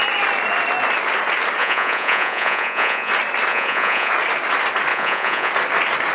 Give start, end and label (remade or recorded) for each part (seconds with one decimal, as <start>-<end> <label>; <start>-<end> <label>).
0.0-1.6 recorded; 1.6-3.1 remade; 3.1-3.5 recorded; 3.5-4.1 remade; 4.1-4.9 recorded; 4.9-5.5 remade; 5.5-6.1 recorded

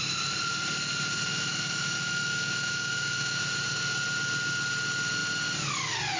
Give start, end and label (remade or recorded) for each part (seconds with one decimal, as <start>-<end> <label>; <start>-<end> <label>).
0.0-1.3 recorded; 1.3-3.4 remade; 3.4-6.2 recorded

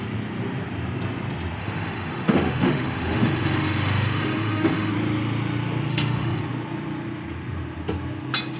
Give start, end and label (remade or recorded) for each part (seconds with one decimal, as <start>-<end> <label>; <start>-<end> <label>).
0.0-1.6 recorded; 1.6-4.9 remade; 4.9-5.9 recorded; 5.9-6.4 remade; 6.4-8.6 recorded

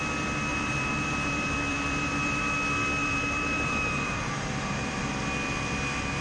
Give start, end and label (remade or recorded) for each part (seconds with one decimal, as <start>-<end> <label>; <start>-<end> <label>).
0.0-0.5 recorded; 0.5-2.5 remade; 2.5-3.0 recorded; 3.0-5.1 remade; 5.1-6.2 recorded

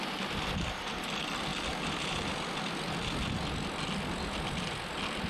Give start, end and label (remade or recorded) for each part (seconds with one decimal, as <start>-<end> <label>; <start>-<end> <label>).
0.0-5.3 recorded